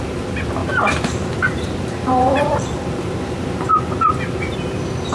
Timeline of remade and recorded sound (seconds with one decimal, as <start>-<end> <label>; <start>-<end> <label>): 0.0-0.6 recorded; 0.6-3.7 remade; 3.7-5.1 recorded